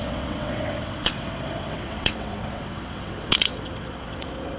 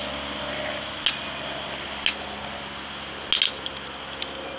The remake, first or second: first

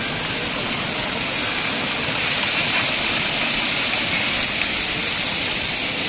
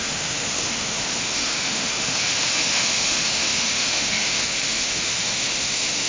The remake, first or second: second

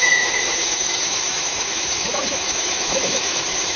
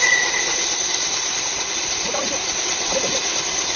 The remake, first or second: first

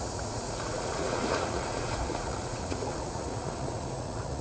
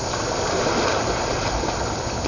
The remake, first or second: first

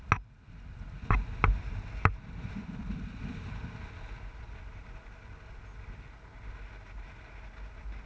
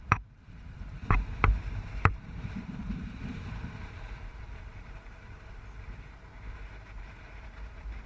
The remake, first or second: second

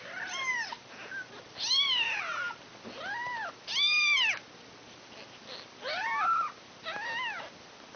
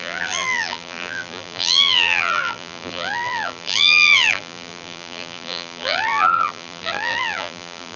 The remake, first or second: second